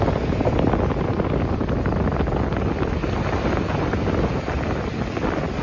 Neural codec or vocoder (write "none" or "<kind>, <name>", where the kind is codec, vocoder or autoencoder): none